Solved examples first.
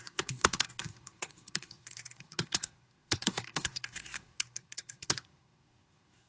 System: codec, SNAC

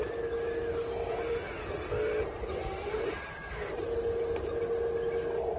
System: none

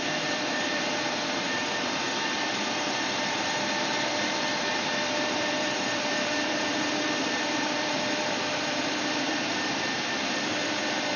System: vocoder, BigVGAN v2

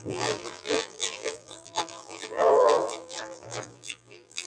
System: vocoder, BigVGAN v2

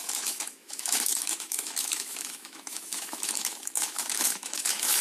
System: autoencoder, DAC-VAE